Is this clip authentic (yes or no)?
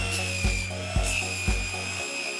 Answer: yes